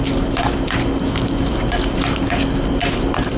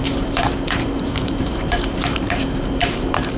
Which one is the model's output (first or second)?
second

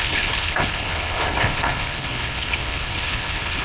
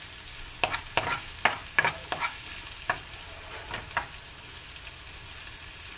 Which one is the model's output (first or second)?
first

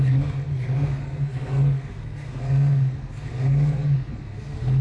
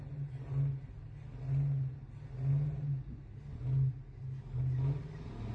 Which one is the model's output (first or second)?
first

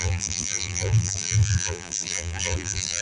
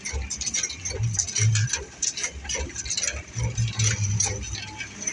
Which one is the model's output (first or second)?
first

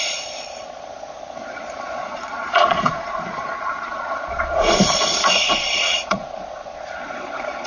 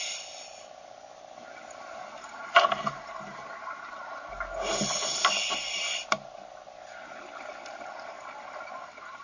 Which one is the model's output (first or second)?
first